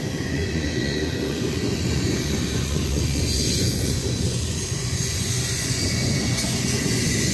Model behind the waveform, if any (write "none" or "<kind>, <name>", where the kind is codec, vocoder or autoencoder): vocoder, Vocos